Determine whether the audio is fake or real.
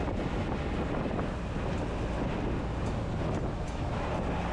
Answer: real